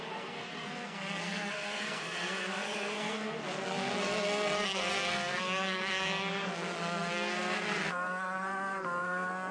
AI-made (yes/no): yes